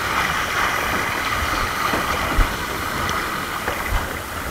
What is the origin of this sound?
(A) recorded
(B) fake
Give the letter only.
A